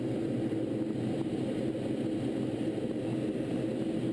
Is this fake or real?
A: real